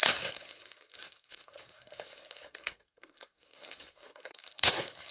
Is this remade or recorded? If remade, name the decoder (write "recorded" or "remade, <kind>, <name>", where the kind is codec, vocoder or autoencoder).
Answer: remade, codec, SNAC